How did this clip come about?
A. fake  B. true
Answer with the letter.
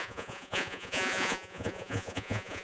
A